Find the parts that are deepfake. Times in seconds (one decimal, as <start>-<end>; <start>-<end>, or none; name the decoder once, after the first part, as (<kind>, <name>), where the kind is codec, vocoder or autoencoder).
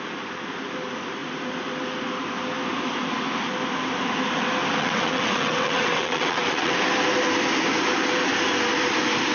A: 4.8-6.8 (vocoder, WaveNeXt)